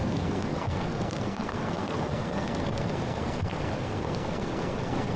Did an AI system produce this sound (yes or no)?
yes